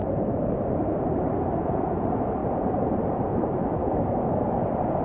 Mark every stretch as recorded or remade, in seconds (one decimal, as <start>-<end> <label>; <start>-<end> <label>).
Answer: 0.0-3.8 recorded; 3.8-4.6 remade; 4.6-5.0 recorded